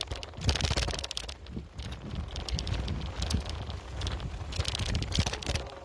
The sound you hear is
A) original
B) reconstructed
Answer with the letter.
A